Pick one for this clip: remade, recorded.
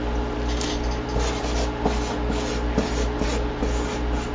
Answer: recorded